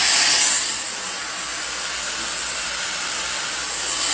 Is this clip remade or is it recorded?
recorded